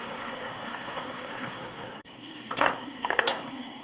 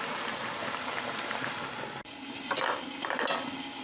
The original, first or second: second